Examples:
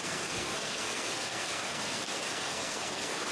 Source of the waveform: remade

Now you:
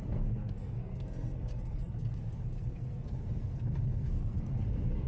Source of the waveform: remade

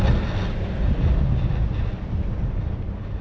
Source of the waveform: recorded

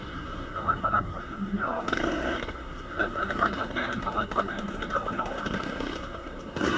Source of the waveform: remade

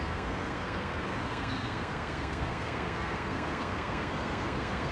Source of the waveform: remade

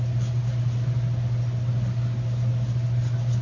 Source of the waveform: recorded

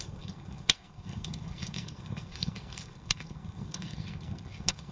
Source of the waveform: remade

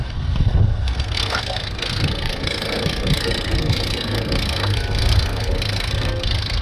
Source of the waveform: remade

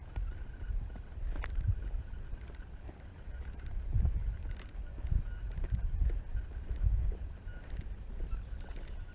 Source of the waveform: recorded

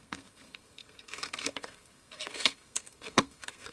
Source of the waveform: remade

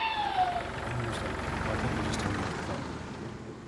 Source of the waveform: recorded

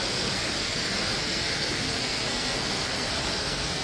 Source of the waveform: remade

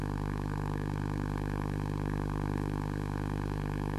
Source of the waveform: remade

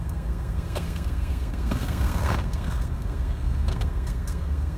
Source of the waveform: remade